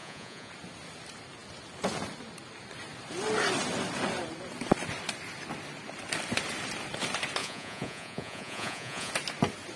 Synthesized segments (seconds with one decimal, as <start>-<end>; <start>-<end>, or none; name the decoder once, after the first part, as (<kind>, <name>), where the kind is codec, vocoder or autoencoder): 0.0-0.5 (vocoder, Vocos); 7.4-9.1